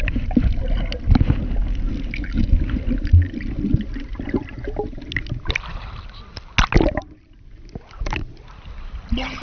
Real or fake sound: real